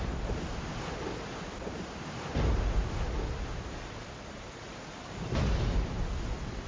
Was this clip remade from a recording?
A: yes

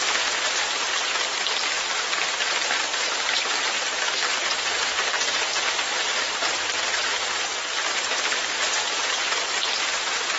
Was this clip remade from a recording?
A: yes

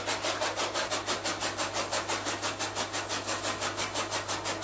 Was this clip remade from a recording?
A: no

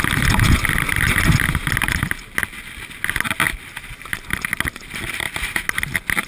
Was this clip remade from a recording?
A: no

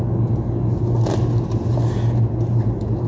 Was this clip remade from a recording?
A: no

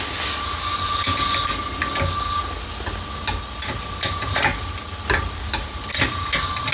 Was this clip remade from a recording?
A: no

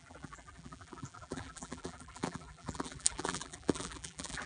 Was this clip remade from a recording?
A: yes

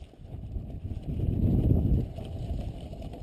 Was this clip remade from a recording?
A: no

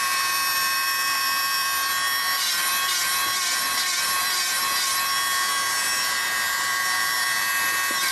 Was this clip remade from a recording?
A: yes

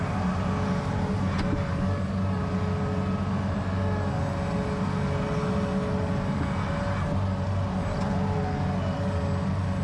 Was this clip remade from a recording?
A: no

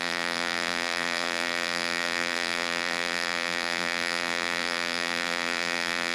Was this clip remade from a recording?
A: yes